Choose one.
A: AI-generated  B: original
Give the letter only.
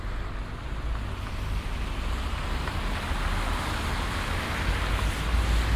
B